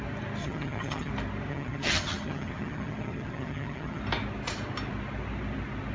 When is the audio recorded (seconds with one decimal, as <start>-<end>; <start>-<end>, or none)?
0.0-0.4; 1.1-1.5; 4.0-5.9